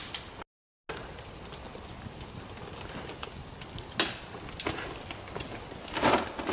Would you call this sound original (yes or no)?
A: yes